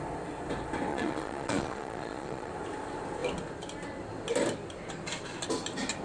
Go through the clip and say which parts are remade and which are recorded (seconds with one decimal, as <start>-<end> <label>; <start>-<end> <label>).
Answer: 0.0-0.9 recorded; 0.9-2.5 remade; 2.5-6.0 recorded